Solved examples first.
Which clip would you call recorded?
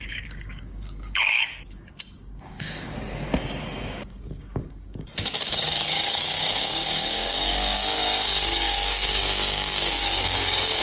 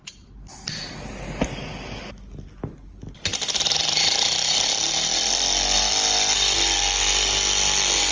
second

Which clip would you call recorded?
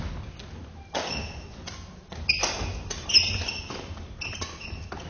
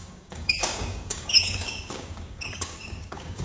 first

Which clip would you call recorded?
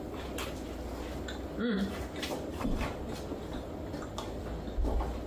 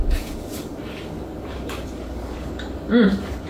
first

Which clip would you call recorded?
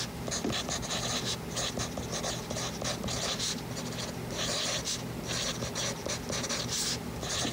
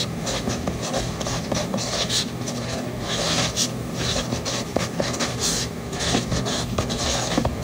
first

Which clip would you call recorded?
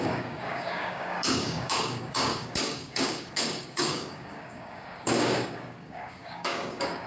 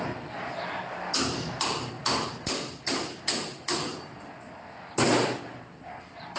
second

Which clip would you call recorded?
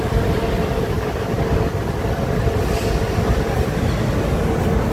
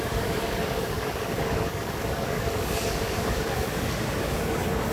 first